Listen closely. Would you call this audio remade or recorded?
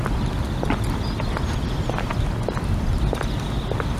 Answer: recorded